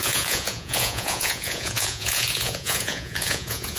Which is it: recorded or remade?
remade